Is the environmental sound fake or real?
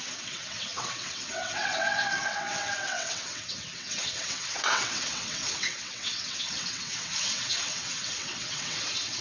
fake